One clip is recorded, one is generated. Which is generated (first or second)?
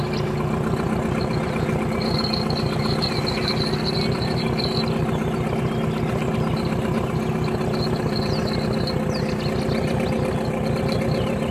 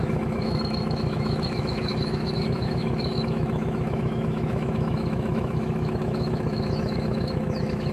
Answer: second